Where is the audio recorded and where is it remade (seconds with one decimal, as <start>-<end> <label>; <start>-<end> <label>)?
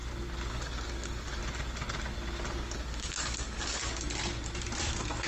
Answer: 0.0-0.5 recorded; 0.5-1.4 remade; 1.4-2.5 recorded; 2.5-3.8 remade; 3.8-5.3 recorded